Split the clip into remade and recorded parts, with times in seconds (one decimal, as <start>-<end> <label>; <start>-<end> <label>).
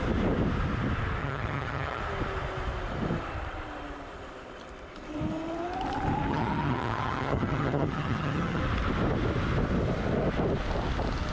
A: 0.0-1.2 recorded; 1.2-2.0 remade; 2.0-6.3 recorded; 6.3-8.6 remade; 8.6-11.3 recorded